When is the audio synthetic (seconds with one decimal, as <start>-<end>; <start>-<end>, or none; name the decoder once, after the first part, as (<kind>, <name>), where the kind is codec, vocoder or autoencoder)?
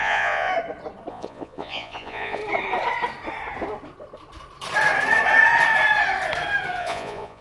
0.0-0.5 (vocoder, Vocos); 1.1-2.4; 6.8-7.4